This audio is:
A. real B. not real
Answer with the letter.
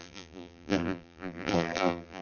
B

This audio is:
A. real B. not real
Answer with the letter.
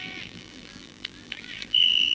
B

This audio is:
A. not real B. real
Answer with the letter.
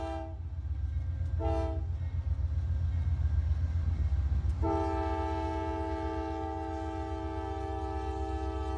B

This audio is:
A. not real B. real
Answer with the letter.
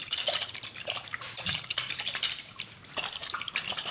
A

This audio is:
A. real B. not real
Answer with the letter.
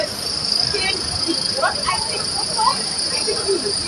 B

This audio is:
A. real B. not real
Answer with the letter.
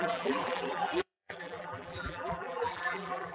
B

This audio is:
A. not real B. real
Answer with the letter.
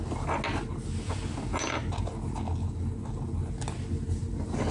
B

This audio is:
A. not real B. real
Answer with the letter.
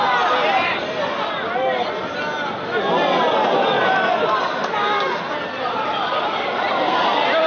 B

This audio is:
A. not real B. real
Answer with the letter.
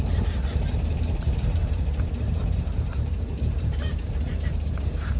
A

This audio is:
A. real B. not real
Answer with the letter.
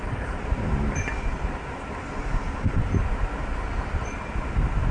A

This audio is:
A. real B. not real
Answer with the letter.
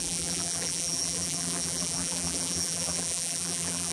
B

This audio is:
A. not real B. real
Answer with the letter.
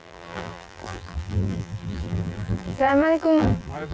A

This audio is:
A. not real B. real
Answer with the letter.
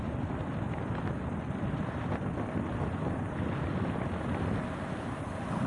B